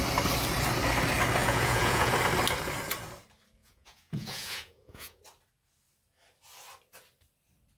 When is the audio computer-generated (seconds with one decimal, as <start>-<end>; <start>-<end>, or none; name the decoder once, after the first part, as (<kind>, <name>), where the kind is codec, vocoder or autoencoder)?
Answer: 1.4-2.1 (vocoder, Vocos); 3.6-5.2